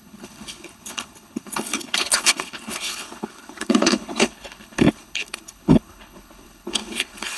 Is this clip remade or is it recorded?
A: remade